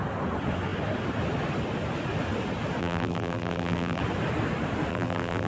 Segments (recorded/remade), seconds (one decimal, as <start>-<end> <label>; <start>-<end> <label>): 0.0-2.8 recorded; 2.8-4.0 remade; 4.0-4.9 recorded; 4.9-5.5 remade